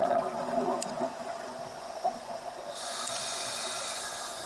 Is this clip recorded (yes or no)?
no